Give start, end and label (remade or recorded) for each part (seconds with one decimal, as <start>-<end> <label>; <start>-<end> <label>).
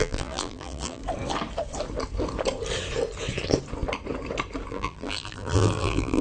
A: 0.0-1.0 remade; 1.0-4.7 recorded; 4.7-6.2 remade